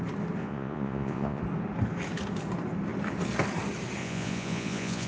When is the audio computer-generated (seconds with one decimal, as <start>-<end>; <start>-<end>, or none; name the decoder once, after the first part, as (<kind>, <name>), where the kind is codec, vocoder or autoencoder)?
0.4-1.4 (vocoder, Vocos); 4.0-5.1

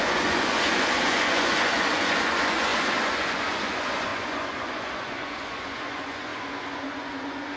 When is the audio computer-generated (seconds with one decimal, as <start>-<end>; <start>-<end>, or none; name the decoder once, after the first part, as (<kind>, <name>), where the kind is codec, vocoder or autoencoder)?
0.0-7.6 (vocoder, Vocos)

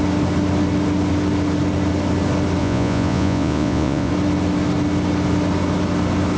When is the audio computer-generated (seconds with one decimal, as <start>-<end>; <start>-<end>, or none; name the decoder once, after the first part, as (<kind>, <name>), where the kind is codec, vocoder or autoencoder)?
2.6-4.1 (vocoder, Vocos)

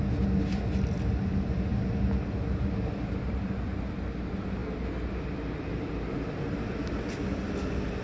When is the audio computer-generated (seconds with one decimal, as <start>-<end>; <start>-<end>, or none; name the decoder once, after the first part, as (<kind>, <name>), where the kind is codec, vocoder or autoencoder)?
none

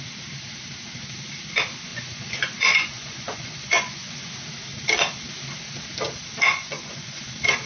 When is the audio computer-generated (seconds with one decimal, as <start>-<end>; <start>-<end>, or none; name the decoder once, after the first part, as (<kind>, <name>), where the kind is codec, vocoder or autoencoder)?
1.9-4.3 (vocoder, Vocos); 6.5-7.2